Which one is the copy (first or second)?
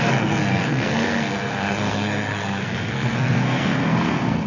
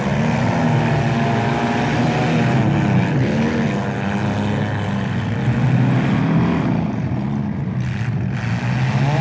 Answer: first